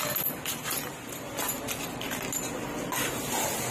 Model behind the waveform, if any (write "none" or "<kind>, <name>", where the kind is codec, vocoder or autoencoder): none